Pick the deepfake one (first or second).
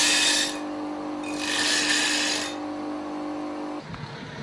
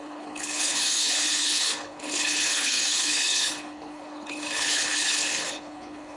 second